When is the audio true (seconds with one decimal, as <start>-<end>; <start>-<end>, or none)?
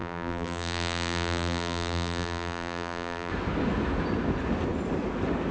3.3-5.5